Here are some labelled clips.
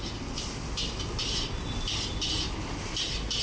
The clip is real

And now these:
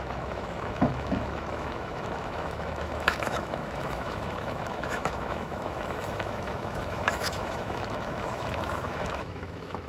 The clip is fake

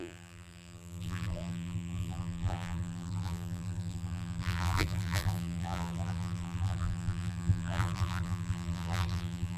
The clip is fake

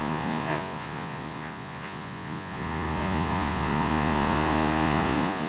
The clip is fake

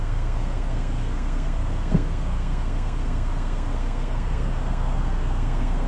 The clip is fake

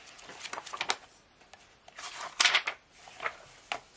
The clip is real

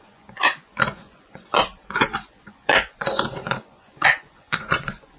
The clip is fake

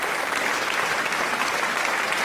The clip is real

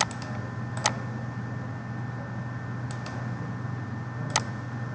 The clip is real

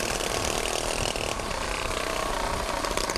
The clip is real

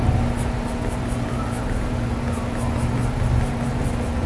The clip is real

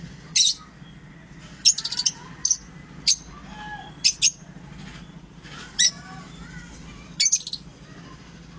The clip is real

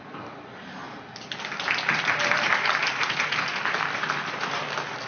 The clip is real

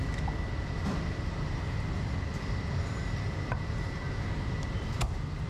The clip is real